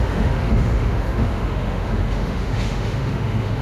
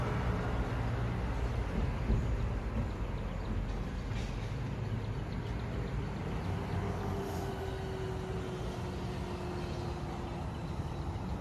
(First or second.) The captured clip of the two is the second